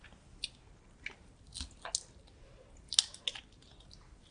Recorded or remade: recorded